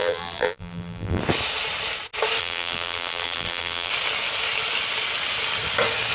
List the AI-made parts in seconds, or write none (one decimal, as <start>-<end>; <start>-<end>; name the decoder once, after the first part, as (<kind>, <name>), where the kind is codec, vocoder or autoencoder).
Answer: 0.0-1.2 (vocoder, BigVGAN v2); 2.4-3.9